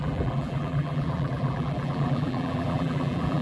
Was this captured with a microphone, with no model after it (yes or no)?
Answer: no